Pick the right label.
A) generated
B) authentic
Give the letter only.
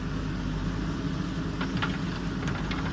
B